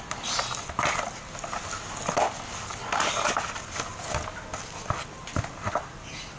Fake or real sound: real